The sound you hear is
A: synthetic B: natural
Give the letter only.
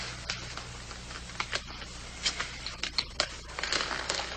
B